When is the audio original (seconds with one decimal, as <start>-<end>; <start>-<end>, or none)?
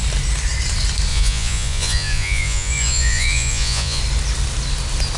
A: 0.0-1.1; 4.0-5.2